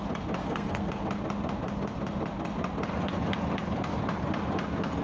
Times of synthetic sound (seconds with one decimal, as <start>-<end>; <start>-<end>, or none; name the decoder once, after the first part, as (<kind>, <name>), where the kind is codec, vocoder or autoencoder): 0.4-0.9 (codec, SNAC)